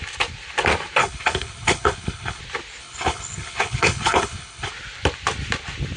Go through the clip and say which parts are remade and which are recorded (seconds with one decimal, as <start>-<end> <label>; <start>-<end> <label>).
0.0-1.0 recorded; 1.0-2.4 remade; 2.4-2.8 recorded; 2.8-4.7 remade; 4.7-6.0 recorded